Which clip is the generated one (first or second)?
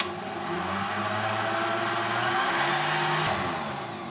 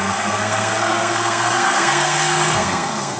second